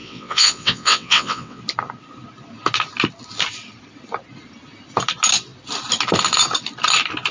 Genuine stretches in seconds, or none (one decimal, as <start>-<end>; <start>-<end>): 1.6-7.3